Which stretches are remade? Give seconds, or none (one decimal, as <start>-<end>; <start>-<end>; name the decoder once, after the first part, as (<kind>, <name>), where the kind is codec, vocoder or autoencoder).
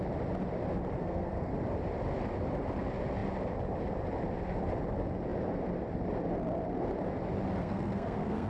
1.0-1.5 (codec, SNAC); 7.6-8.5